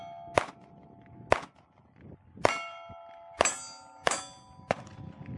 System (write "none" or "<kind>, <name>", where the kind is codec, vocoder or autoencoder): none